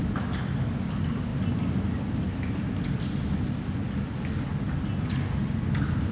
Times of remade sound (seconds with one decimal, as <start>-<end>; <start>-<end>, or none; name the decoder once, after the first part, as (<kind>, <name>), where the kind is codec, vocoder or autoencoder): none